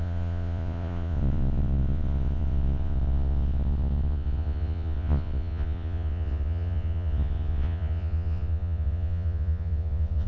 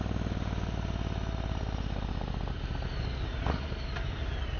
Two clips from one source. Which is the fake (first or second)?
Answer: first